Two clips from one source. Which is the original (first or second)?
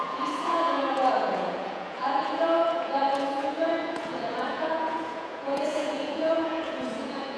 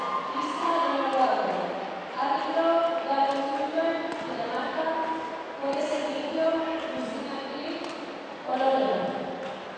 second